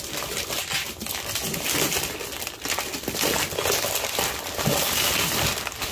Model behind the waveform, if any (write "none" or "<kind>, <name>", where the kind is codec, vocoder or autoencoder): none